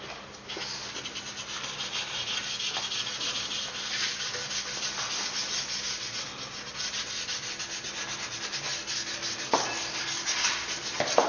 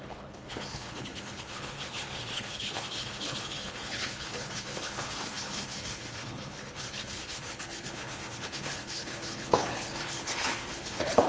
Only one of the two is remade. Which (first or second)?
second